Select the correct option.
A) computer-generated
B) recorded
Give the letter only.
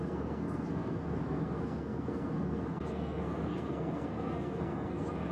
A